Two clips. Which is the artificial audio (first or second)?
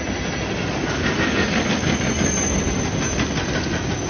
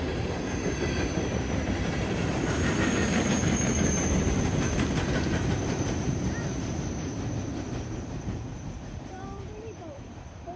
second